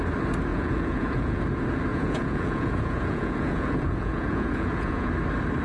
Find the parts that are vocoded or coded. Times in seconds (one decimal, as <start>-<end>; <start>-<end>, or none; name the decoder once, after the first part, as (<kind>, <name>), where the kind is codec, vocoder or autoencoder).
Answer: 0.5-1.4 (vocoder, Vocos); 1.9-5.1